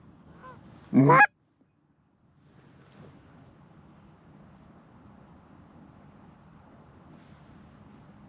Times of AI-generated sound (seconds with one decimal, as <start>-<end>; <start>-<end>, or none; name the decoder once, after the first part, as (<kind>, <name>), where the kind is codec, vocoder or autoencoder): none